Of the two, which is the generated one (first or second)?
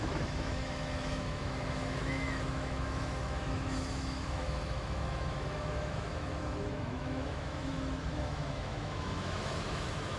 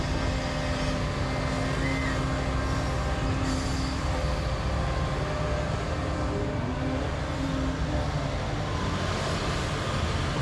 first